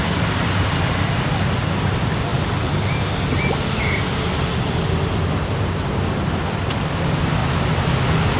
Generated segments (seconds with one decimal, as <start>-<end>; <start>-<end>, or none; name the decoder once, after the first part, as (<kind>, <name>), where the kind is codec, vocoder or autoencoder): none